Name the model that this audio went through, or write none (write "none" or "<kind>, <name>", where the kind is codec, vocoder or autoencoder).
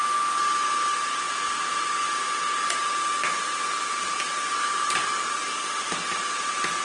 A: none